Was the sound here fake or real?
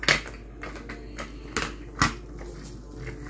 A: real